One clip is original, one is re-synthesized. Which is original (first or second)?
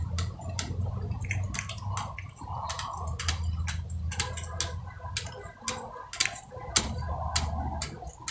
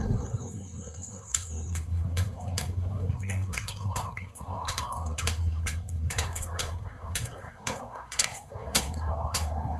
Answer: first